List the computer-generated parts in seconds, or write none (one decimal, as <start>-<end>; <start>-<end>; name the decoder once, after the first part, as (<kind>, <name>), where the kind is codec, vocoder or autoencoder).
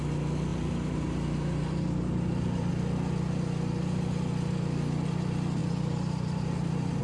0.5-2.7 (vocoder, BigVGAN v2); 5.6-7.0